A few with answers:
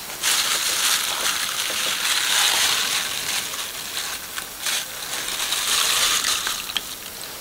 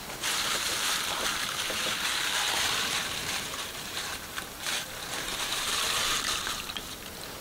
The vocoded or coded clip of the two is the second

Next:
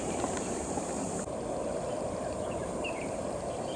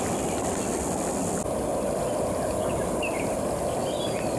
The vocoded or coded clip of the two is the first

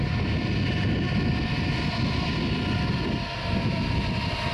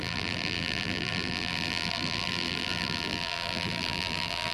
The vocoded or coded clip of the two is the second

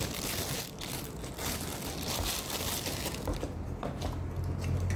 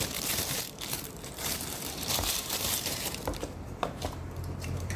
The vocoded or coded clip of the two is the second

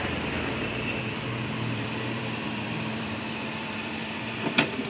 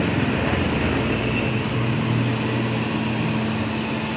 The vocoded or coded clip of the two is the first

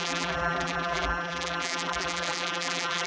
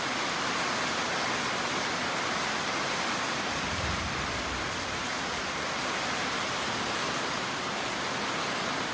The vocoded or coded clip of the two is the first